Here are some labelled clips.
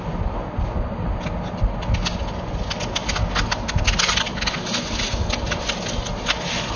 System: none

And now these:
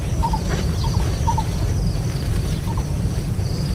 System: vocoder, BigVGAN v2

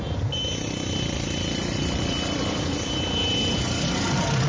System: none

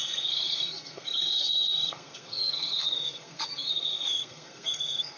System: codec, SNAC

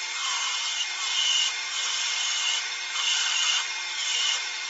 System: vocoder, BigVGAN v2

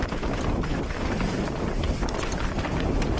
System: none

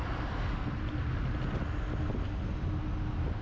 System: none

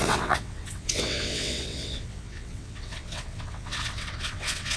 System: vocoder, WaveNeXt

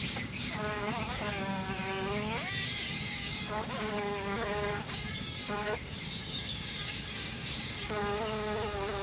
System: codec, DAC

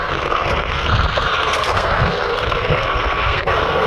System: codec, SNAC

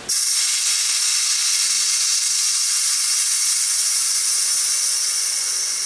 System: vocoder, Vocos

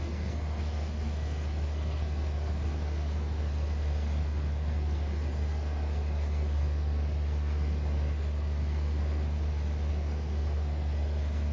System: codec, SNAC